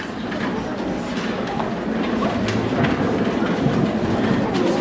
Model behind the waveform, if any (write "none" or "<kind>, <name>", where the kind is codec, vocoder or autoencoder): none